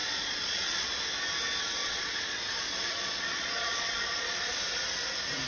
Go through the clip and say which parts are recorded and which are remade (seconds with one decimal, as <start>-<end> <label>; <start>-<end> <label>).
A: 0.0-1.0 remade; 1.0-1.8 recorded; 1.8-4.5 remade; 4.5-5.5 recorded